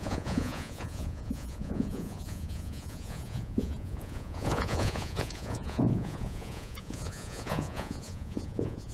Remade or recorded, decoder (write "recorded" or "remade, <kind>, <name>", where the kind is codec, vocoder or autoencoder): remade, vocoder, Vocos